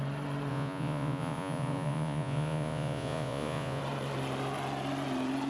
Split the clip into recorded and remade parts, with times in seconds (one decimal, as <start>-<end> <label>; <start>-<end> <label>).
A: 0.0-0.5 recorded; 0.5-3.8 remade; 3.8-5.5 recorded